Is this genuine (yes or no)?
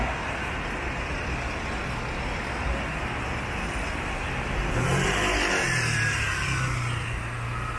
yes